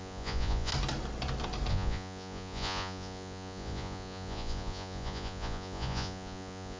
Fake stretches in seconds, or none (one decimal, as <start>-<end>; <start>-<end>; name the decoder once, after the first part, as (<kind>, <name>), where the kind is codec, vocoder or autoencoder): 0.0-0.7 (vocoder, Vocos); 1.7-6.8